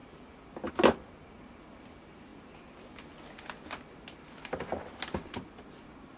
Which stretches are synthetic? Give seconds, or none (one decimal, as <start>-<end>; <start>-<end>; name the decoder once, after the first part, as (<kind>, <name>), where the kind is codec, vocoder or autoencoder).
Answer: none